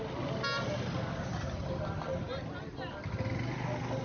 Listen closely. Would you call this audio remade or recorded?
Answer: recorded